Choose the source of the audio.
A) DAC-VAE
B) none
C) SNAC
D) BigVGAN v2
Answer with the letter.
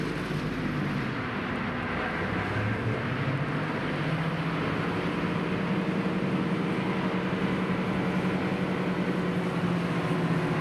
B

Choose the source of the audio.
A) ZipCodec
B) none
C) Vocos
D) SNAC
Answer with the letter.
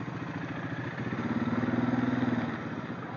B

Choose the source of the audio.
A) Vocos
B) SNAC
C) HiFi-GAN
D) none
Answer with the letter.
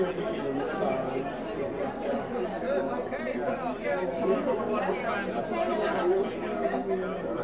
D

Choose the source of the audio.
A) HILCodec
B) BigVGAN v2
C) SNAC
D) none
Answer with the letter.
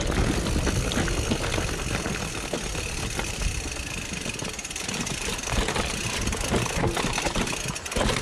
D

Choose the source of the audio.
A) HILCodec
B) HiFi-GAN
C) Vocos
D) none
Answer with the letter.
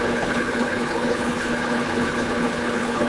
A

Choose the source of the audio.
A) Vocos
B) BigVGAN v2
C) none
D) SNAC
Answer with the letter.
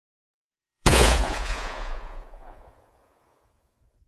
A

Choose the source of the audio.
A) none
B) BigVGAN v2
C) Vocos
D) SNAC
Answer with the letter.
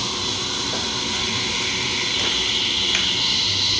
A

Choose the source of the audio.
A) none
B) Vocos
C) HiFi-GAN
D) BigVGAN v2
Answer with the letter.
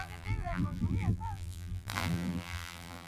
D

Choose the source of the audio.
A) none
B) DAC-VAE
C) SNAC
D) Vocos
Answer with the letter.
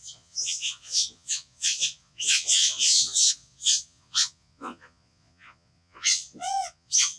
D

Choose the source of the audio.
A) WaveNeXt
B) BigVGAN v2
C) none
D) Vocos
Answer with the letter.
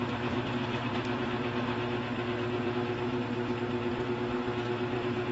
B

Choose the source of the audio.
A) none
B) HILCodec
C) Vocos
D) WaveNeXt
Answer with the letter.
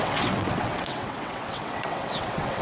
D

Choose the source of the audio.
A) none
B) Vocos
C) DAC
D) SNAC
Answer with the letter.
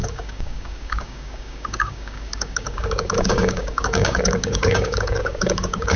C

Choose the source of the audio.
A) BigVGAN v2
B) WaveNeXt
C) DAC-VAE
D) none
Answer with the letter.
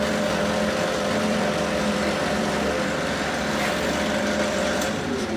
A